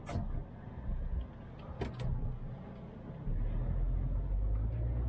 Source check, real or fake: real